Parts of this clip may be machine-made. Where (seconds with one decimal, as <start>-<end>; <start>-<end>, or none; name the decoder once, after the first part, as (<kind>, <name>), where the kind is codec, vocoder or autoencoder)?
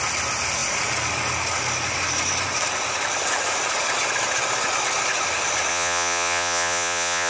5.7-7.3 (vocoder, Vocos)